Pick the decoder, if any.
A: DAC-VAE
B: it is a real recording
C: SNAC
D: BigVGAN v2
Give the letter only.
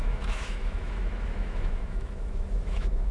A